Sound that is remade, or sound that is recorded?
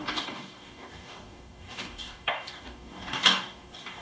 remade